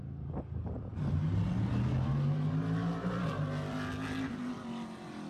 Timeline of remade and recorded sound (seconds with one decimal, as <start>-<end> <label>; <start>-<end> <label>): 0.0-5.3 recorded